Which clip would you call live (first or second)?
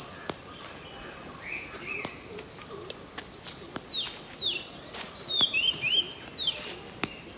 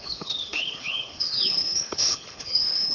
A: first